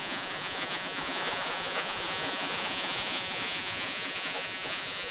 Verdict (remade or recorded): remade